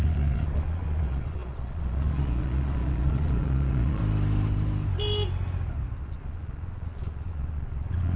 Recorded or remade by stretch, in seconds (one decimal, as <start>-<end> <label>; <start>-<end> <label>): 0.0-4.0 remade; 4.0-6.0 recorded; 6.0-8.2 remade